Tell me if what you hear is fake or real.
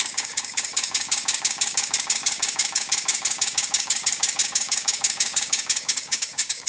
fake